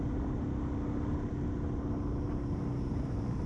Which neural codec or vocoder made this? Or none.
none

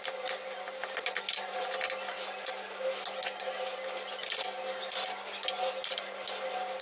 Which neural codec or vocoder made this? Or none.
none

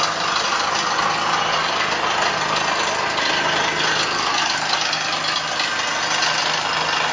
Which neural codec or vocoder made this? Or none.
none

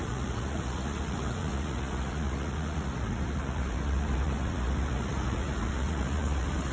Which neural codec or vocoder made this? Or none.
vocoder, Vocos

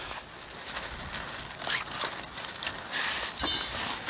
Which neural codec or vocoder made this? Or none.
none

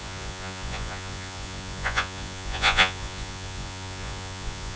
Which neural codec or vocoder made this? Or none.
vocoder, Vocos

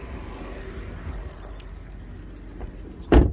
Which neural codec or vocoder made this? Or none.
none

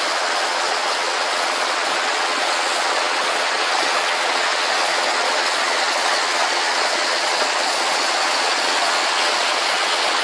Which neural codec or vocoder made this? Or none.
vocoder, Vocos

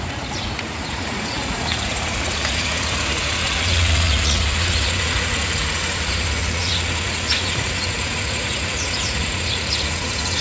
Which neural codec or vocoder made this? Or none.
vocoder, Vocos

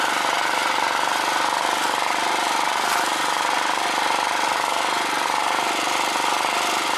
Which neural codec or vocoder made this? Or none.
none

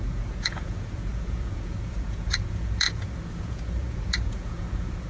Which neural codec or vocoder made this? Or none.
vocoder, Vocos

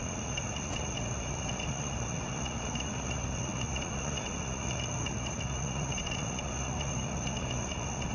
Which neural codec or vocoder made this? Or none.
vocoder, Vocos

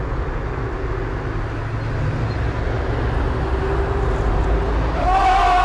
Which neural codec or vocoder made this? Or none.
none